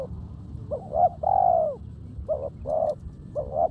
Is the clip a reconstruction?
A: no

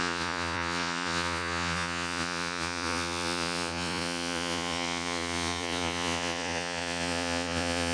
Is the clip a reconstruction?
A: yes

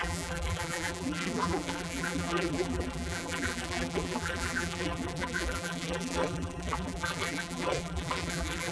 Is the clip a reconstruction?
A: yes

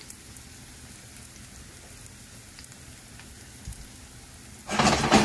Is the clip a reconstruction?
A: no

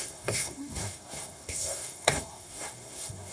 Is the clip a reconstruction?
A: yes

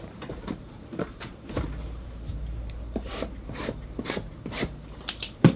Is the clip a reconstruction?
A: yes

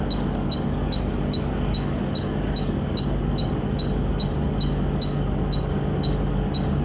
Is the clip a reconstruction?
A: yes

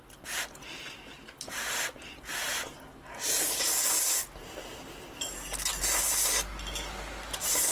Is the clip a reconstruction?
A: no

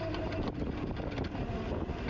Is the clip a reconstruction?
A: no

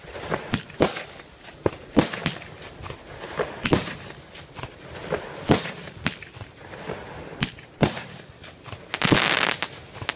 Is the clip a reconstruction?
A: no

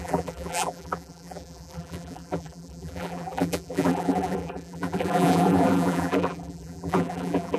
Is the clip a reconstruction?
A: yes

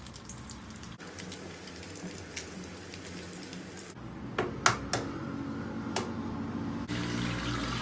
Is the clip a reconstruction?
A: no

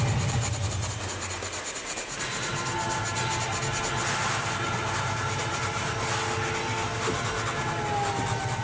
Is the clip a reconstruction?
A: no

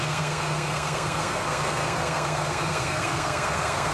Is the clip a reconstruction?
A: yes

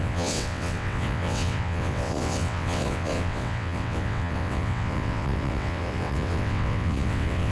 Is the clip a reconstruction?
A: yes